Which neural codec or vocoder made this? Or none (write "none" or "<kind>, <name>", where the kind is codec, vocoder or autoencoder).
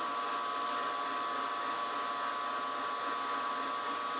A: none